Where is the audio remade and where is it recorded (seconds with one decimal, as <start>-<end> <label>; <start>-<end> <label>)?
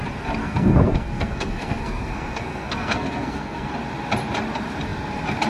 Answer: 0.0-0.4 recorded; 0.4-3.7 remade; 3.7-5.5 recorded